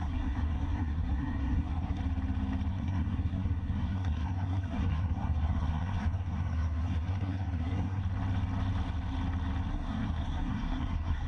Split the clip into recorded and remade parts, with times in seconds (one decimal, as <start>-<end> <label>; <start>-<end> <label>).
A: 0.0-2.0 remade; 2.0-2.7 recorded; 2.7-8.0 remade; 8.0-9.7 recorded; 9.7-11.3 remade